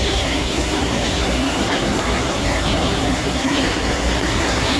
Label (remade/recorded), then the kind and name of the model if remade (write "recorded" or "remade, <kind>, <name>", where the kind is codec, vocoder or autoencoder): remade, codec, SNAC